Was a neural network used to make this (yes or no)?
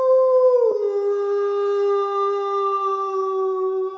no